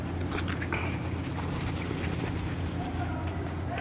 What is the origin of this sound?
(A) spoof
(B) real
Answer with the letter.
B